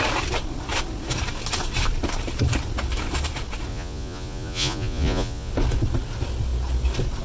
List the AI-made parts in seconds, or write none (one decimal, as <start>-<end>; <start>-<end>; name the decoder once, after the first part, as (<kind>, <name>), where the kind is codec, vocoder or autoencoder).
3.7-5.5 (vocoder, Vocos)